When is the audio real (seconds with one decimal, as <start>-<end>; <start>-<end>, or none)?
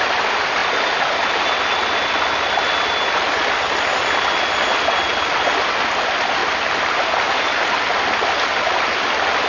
0.0-9.5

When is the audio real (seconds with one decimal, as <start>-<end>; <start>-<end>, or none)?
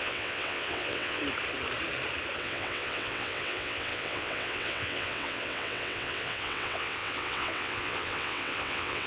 1.2-2.4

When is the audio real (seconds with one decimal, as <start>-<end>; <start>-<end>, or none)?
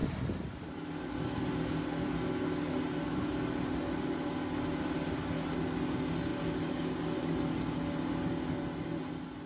0.0-9.5